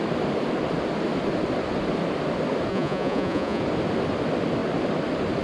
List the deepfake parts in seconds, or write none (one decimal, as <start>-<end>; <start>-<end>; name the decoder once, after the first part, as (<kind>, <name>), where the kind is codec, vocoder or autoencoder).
2.7-3.6 (vocoder, Vocos)